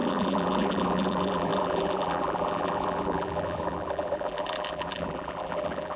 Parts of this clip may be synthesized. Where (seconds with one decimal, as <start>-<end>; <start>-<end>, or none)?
0.0-6.0